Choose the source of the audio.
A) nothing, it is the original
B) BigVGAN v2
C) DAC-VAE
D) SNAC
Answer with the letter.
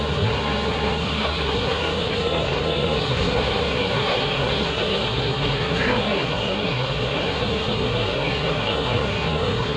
D